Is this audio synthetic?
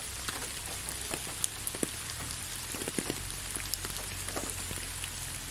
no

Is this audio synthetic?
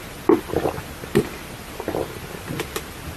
no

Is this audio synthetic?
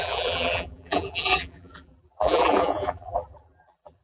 yes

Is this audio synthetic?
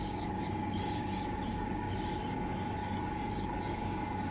yes